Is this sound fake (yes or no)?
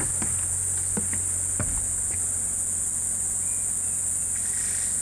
no